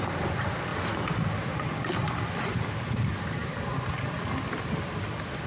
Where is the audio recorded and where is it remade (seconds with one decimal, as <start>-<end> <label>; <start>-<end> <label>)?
0.0-0.7 remade; 0.7-3.0 recorded; 3.0-3.4 remade; 3.4-3.9 recorded; 3.9-5.5 remade